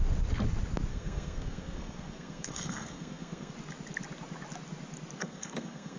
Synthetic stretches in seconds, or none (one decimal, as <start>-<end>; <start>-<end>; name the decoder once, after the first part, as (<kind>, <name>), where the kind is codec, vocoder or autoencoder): 0.9-3.5 (codec, SNAC); 5.2-6.0